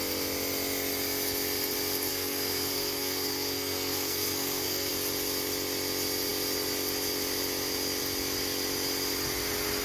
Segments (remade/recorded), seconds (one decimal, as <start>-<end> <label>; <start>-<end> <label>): 0.0-2.1 recorded; 2.1-4.9 remade; 4.9-9.8 recorded